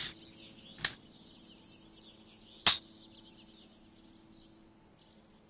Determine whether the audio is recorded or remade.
recorded